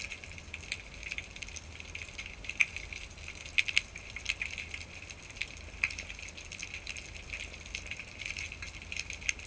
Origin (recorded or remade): recorded